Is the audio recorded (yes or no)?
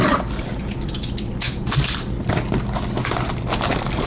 yes